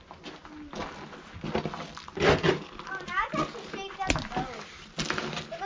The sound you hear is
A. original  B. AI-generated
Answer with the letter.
A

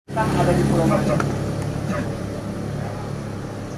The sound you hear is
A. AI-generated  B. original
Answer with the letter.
B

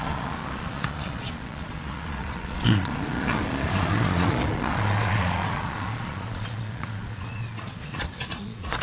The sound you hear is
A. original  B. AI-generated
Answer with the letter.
B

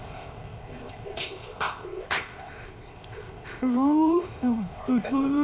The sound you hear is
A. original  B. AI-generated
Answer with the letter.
B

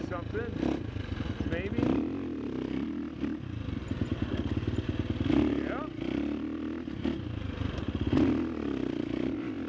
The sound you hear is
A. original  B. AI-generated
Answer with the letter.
A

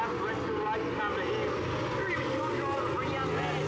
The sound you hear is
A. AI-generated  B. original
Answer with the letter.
B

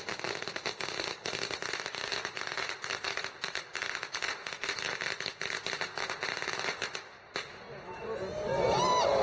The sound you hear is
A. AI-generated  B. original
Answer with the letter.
B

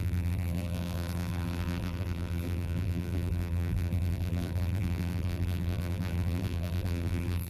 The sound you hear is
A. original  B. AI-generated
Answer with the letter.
B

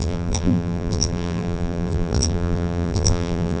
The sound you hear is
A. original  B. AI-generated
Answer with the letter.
B